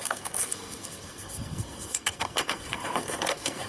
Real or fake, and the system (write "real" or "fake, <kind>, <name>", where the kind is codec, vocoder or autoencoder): fake, codec, SNAC